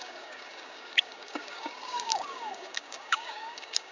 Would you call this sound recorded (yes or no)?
no